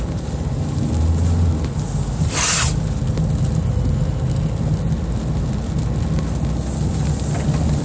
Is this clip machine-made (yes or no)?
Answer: no